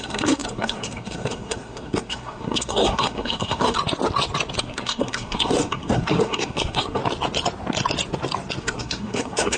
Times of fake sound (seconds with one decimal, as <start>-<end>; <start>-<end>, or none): 0.0-3.8; 4.6-7.0; 8.6-9.6